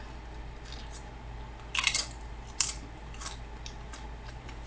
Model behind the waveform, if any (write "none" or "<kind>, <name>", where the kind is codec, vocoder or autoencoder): none